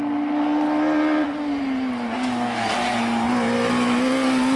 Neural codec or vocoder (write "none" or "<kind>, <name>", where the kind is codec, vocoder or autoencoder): none